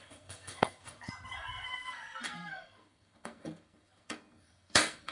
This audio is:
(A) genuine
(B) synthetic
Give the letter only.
B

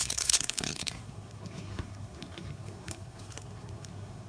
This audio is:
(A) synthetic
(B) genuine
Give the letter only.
A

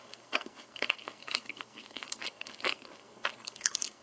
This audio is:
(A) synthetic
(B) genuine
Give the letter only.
A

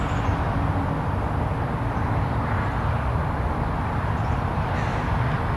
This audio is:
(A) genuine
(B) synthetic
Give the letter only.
A